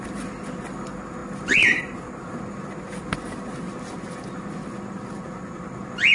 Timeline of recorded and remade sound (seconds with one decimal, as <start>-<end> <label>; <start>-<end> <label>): 0.0-6.1 recorded